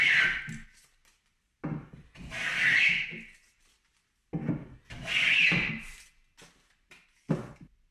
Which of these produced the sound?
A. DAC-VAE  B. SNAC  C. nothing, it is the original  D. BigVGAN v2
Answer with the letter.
C